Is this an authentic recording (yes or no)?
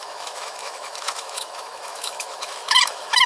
no